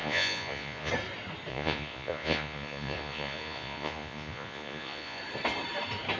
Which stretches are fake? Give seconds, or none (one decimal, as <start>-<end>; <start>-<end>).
0.0-0.9; 1.5-5.2